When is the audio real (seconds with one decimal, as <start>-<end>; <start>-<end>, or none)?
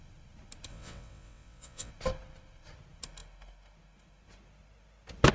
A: 0.0-0.7; 1.9-5.3